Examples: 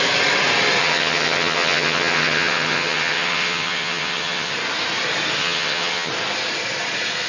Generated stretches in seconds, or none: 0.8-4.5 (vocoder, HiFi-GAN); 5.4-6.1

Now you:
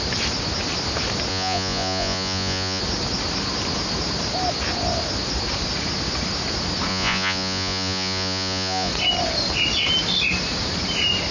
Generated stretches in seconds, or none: 1.3-2.8 (vocoder, Vocos); 6.9-8.9

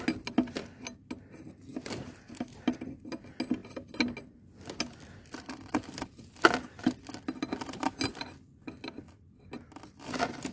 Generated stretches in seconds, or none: none

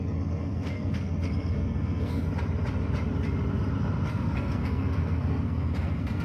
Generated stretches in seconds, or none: 0.0-2.3 (codec, SNAC); 4.1-6.2

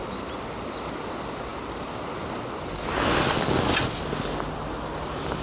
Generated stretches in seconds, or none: none